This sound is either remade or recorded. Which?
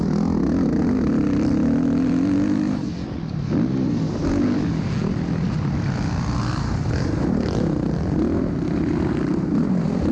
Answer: recorded